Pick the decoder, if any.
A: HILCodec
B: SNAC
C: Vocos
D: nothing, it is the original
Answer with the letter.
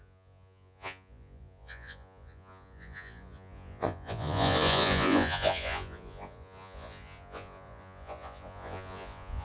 C